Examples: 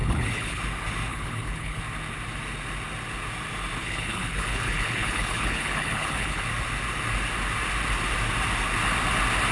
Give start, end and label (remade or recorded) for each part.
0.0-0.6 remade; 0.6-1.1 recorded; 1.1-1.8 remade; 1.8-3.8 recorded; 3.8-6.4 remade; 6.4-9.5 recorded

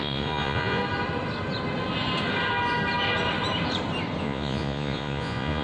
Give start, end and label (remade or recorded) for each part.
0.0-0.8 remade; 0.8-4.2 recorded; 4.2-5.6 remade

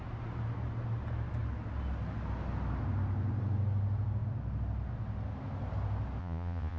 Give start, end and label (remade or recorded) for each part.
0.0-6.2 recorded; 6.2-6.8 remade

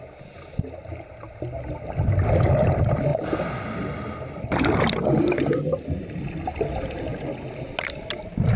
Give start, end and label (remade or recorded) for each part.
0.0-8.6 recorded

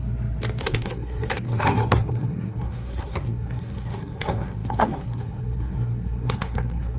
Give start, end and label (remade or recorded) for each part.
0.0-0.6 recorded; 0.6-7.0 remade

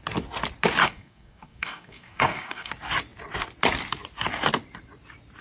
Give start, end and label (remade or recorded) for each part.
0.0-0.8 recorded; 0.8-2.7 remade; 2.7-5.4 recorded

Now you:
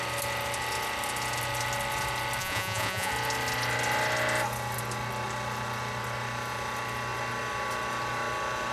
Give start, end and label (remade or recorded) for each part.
0.0-2.4 recorded; 2.4-3.1 remade; 3.1-8.7 recorded

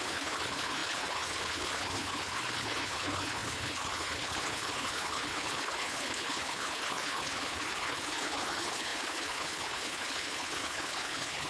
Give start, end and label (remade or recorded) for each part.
0.0-11.5 remade